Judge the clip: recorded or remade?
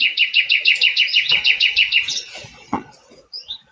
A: remade